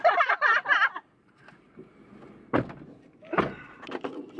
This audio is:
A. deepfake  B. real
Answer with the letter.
B